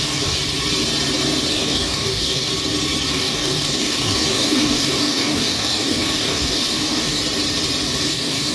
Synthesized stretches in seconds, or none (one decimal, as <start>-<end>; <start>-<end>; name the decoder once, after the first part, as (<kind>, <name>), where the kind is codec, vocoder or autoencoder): 0.0-0.4 (codec, DAC); 1.5-2.5; 3.1-7.2; 8.1-8.5

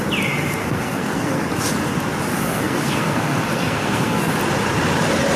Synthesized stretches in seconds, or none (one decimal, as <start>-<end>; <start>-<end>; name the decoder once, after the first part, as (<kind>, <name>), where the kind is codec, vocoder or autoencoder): 0.6-1.5 (codec, SNAC); 2.3-4.3

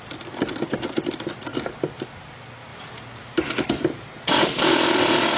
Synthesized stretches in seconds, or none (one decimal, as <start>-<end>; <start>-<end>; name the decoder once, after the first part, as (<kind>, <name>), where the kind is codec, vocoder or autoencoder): 2.7-4.7 (vocoder, BigVGAN v2)

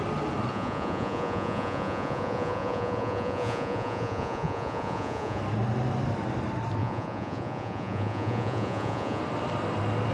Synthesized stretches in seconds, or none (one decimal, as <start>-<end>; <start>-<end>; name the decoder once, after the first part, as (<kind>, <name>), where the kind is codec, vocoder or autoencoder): 0.5-5.4 (vocoder, Vocos); 6.8-9.2